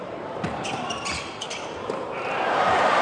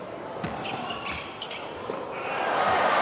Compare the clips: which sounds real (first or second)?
second